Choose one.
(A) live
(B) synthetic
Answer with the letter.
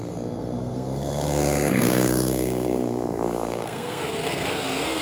B